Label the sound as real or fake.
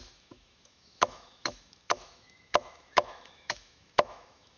fake